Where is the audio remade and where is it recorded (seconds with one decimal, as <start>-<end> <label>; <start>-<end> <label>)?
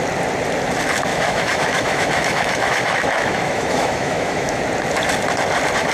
0.0-1.1 recorded; 1.1-4.6 remade; 4.6-5.9 recorded